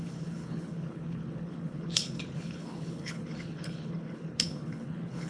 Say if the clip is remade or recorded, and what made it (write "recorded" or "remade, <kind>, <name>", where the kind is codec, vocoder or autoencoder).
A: remade, codec, HILCodec